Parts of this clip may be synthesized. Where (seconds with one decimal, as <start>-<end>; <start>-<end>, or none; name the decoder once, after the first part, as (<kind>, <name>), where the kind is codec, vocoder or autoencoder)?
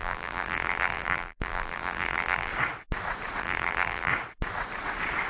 0.0-2.5 (vocoder, BigVGAN v2); 3.4-4.1